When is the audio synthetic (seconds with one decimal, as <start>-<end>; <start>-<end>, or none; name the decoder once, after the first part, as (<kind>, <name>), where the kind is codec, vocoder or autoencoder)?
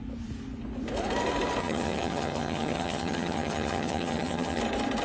1.6-4.6 (vocoder, HiFi-GAN)